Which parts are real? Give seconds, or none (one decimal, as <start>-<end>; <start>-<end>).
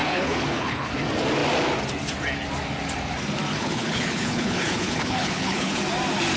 0.9-3.5; 5.8-6.4